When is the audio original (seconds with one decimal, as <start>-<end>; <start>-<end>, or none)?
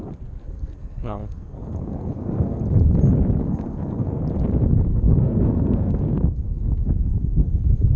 0.0-0.4; 2.6-3.4; 4.2-4.9